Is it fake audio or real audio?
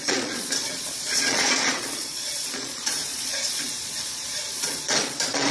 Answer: fake